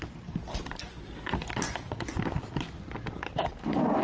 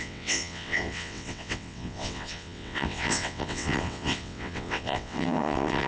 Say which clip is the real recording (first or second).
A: first